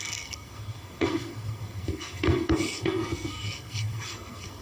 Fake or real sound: fake